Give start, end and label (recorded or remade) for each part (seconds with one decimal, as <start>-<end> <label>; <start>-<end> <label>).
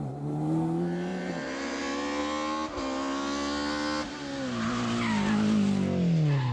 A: 0.0-1.1 recorded; 1.1-1.8 remade; 1.8-6.5 recorded